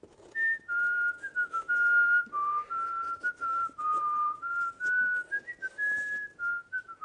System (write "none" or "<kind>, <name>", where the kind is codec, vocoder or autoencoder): none